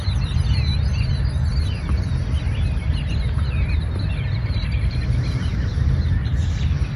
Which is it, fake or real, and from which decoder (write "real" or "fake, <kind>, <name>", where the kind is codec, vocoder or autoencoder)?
real